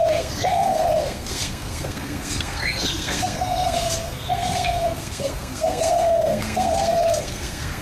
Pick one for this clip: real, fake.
fake